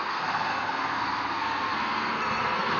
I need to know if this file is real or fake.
fake